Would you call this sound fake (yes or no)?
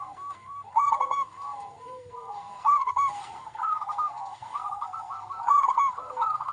yes